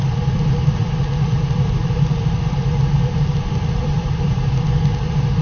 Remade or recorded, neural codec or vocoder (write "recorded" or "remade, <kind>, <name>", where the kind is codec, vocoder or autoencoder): remade, vocoder, BigVGAN v2